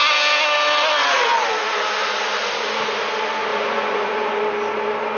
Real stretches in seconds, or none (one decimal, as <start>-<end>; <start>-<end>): 0.0-3.5; 4.3-5.2